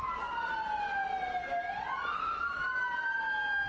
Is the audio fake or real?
real